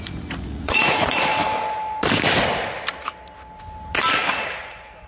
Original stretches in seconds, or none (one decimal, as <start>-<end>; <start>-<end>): 1.3-4.1